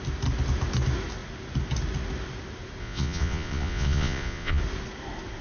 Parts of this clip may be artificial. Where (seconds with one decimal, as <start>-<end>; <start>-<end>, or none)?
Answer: 2.8-4.6